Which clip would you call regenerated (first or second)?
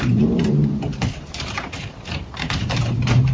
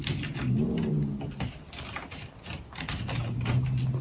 first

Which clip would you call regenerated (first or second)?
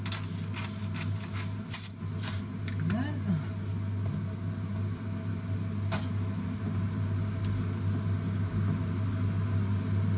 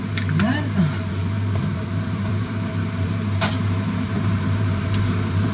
second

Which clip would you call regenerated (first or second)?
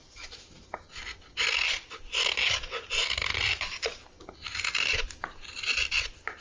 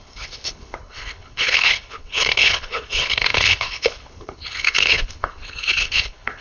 second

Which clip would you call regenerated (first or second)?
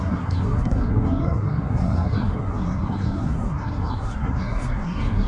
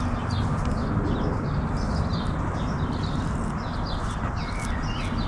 first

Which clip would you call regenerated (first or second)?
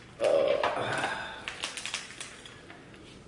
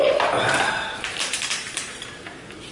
second